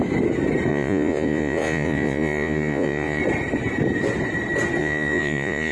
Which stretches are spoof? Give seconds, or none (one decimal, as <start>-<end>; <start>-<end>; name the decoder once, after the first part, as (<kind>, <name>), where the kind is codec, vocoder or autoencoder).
0.7-3.2 (vocoder, Vocos); 4.8-5.7